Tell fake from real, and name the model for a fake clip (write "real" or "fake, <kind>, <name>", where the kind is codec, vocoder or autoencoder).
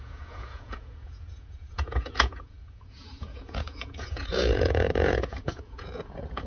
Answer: fake, vocoder, Vocos